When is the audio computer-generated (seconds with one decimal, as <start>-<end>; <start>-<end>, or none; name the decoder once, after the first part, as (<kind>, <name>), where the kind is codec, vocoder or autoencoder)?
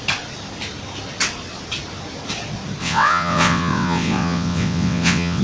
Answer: 2.8-5.4 (vocoder, WaveNeXt)